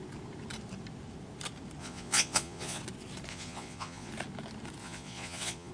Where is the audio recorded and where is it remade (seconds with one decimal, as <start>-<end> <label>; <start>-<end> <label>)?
0.0-1.8 recorded; 1.8-2.8 remade; 2.8-3.3 recorded; 3.3-4.1 remade; 4.1-4.8 recorded; 4.8-5.7 remade